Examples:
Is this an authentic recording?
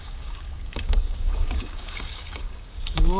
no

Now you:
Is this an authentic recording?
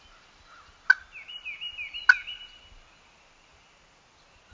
yes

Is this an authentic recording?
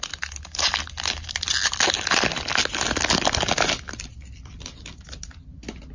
yes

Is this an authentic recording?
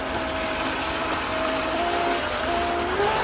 yes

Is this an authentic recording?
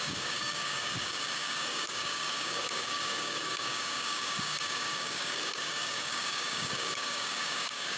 no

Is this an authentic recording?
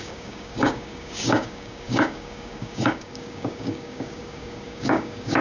no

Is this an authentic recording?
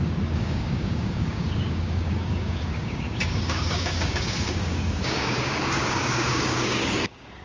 no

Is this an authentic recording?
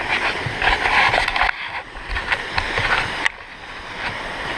yes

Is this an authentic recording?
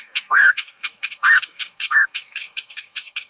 no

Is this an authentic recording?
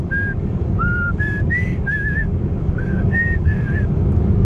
no